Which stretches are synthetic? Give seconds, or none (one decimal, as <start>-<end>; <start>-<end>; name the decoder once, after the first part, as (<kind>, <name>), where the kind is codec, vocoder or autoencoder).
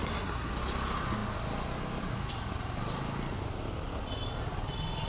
0.0-0.5 (codec, SNAC)